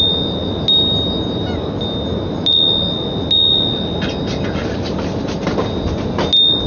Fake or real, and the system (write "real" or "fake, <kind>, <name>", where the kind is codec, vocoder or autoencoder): real